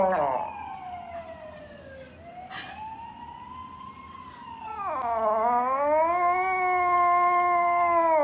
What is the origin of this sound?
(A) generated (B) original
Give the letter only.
B